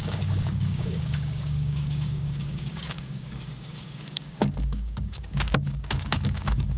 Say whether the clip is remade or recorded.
remade